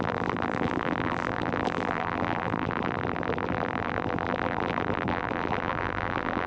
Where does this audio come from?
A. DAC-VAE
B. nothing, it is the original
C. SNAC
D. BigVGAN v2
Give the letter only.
D